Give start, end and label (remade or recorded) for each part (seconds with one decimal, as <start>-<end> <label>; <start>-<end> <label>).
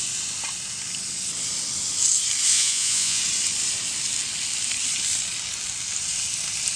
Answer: 0.0-2.5 recorded; 2.5-3.2 remade; 3.2-6.8 recorded